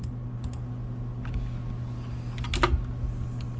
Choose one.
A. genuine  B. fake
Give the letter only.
A